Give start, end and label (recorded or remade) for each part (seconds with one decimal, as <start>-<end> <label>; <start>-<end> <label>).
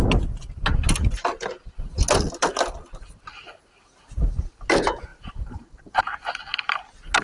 0.0-5.1 recorded; 5.1-6.0 remade; 6.0-7.2 recorded